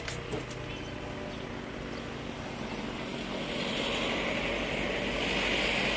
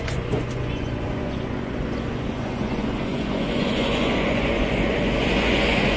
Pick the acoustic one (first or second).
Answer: first